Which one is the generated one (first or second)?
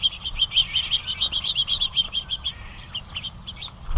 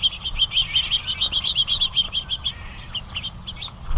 first